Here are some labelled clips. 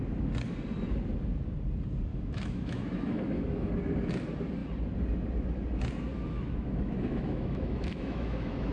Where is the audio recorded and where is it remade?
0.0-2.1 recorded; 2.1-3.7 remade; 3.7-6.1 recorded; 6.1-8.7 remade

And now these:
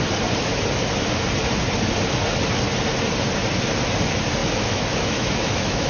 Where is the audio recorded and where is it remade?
0.0-4.4 recorded; 4.4-5.9 remade

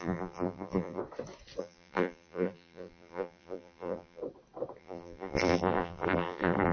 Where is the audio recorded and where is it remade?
0.0-1.0 remade; 1.0-1.6 recorded; 1.6-4.2 remade; 4.2-4.8 recorded; 4.8-6.7 remade

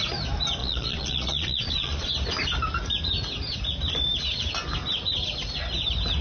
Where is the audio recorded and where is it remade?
0.0-0.6 recorded; 0.6-2.1 remade; 2.1-6.2 recorded

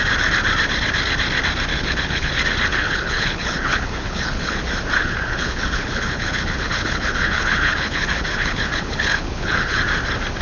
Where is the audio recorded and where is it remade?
0.0-1.7 recorded; 1.7-2.3 remade; 2.3-2.7 recorded; 2.7-4.6 remade; 4.6-5.0 recorded; 5.0-9.8 remade; 9.8-10.4 recorded

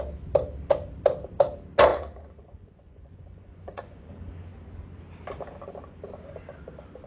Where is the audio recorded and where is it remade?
0.0-1.9 recorded; 1.9-4.1 remade; 4.1-7.1 recorded